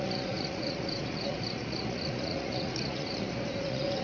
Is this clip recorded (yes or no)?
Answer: no